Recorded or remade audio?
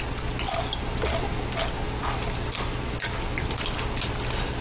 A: recorded